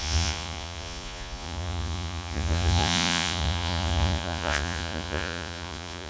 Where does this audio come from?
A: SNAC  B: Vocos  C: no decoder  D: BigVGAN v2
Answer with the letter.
B